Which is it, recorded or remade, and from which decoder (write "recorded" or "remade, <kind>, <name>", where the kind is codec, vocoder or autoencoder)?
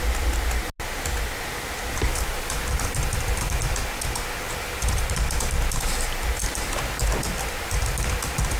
recorded